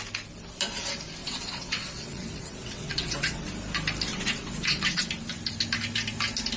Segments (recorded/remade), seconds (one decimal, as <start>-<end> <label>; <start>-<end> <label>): 0.0-1.2 recorded; 1.2-3.5 remade; 3.5-4.1 recorded; 4.1-5.1 remade; 5.1-6.6 recorded